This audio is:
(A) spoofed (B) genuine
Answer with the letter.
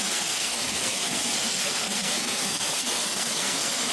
A